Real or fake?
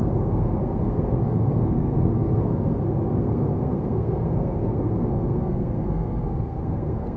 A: fake